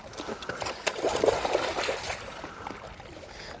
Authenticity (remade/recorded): recorded